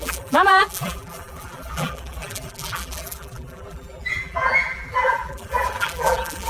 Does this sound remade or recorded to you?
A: remade